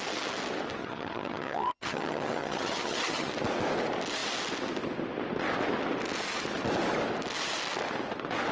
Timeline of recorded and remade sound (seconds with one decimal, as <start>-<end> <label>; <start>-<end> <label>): 0.0-0.8 recorded; 0.8-3.3 remade; 3.3-8.5 recorded